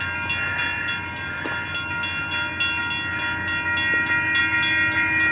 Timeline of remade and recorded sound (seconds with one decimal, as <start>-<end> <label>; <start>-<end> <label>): 0.0-5.3 recorded

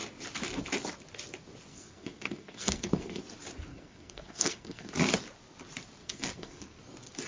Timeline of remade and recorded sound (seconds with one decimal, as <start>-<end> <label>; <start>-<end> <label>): 0.0-1.7 recorded; 1.7-3.2 remade; 3.2-3.7 recorded; 3.7-4.9 remade; 4.9-6.0 recorded; 6.0-6.8 remade; 6.8-7.3 recorded